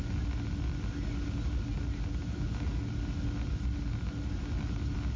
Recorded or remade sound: recorded